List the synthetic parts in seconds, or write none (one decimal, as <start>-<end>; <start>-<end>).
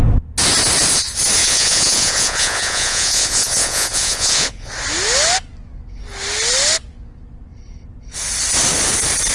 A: 1.4-4.7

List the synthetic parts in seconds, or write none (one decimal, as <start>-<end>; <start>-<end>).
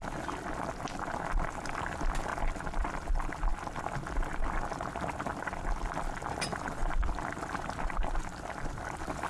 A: none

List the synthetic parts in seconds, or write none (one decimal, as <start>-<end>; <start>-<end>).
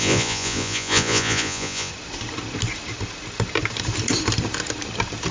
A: 0.0-1.9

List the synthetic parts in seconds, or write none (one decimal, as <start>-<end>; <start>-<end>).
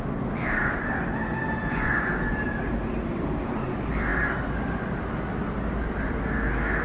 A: 1.6-2.1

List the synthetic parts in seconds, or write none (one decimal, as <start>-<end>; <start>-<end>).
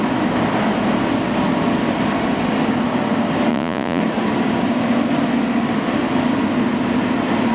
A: 3.5-4.0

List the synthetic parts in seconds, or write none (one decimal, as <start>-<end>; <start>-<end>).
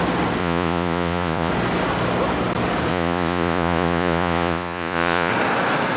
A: 0.4-1.5; 2.9-5.3